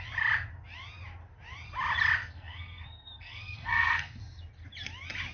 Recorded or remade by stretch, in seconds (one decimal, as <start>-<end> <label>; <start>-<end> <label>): 0.0-2.2 recorded; 2.2-4.2 remade; 4.2-5.3 recorded